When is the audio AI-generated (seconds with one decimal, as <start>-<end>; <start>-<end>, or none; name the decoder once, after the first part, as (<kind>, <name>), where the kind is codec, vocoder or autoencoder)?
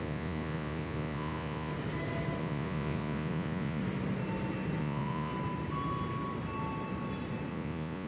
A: 0.0-1.7 (vocoder, Vocos); 2.4-3.8; 4.8-5.3; 7.5-8.1